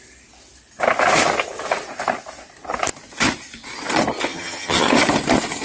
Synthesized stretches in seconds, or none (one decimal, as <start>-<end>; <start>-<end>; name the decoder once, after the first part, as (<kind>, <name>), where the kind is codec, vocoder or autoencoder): 4.3-4.9 (vocoder, HiFi-GAN)